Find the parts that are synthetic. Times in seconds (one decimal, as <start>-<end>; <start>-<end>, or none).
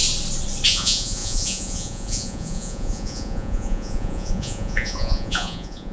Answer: 0.7-5.9